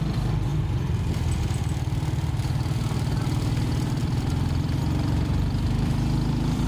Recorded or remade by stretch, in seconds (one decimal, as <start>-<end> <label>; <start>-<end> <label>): 0.0-1.6 remade; 1.6-3.2 recorded; 3.2-6.7 remade